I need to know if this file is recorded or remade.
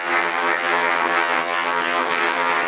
remade